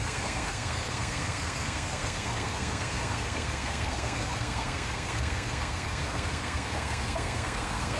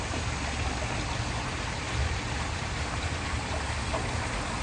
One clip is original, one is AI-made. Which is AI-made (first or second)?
first